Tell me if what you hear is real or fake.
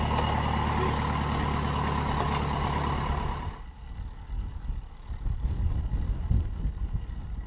real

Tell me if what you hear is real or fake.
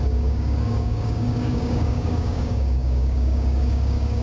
fake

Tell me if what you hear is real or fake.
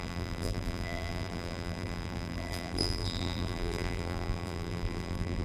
fake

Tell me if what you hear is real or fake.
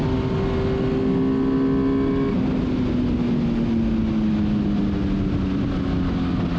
real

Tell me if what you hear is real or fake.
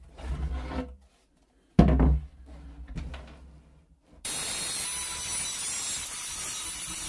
real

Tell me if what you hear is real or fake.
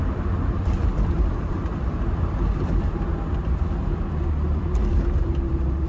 fake